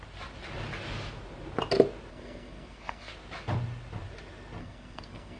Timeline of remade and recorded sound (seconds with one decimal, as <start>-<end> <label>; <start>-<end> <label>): 0.0-2.1 recorded; 2.1-3.1 remade; 3.1-4.6 recorded; 4.6-5.4 remade